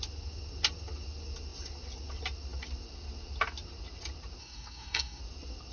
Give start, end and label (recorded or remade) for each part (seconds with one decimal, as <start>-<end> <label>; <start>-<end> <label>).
0.0-4.4 recorded; 4.4-5.2 remade; 5.2-5.7 recorded